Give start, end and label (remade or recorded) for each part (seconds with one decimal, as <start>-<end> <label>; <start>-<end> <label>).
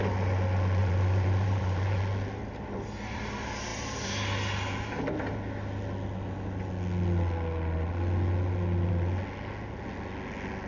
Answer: 0.0-0.8 recorded; 0.8-2.0 remade; 2.0-10.7 recorded